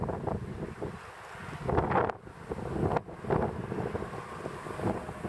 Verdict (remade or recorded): recorded